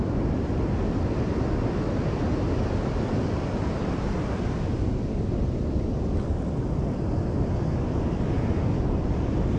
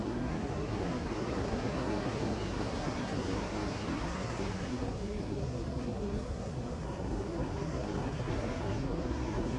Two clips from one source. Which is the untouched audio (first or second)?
first